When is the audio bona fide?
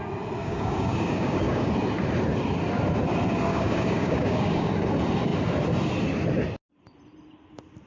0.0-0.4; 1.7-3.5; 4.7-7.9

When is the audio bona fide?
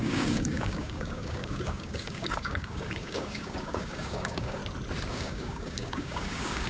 4.6-5.1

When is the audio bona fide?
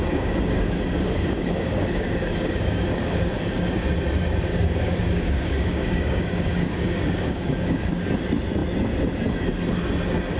3.8-4.5; 7.9-10.4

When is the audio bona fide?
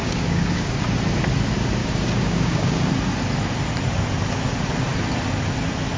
0.8-1.8; 2.9-6.0